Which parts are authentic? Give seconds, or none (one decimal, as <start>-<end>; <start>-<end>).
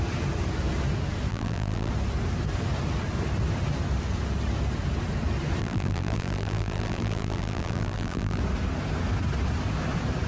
0.0-1.3; 1.9-5.6; 8.4-10.3